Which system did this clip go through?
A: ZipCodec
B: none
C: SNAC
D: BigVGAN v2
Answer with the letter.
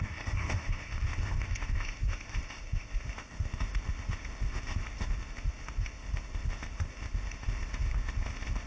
A